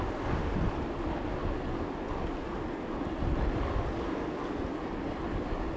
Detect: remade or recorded recorded